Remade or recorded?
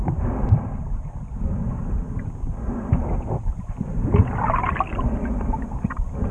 recorded